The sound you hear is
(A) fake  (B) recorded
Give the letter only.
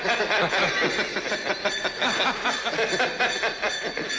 B